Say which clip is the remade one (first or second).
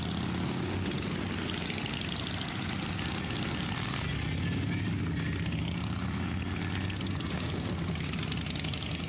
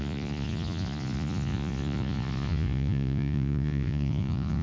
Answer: second